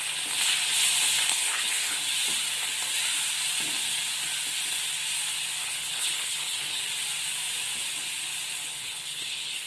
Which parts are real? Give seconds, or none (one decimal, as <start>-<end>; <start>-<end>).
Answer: 0.0-1.3; 2.0-5.6; 6.8-8.7